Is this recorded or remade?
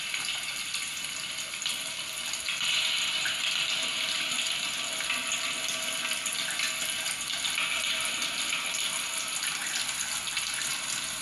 remade